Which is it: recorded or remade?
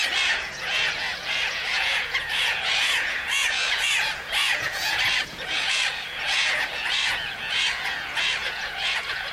remade